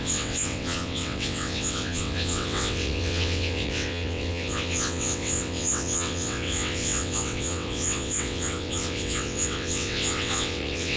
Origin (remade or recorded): remade